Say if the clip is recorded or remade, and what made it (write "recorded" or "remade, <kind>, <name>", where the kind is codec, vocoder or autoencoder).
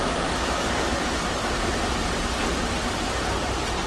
recorded